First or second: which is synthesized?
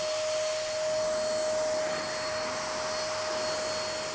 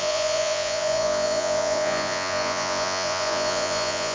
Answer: second